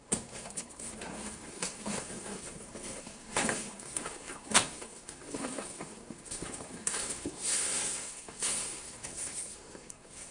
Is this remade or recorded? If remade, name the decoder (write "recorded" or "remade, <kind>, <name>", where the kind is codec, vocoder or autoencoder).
remade, codec, SNAC